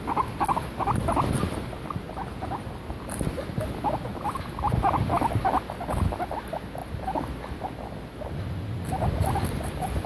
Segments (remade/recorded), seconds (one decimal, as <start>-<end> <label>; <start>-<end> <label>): 0.0-10.1 recorded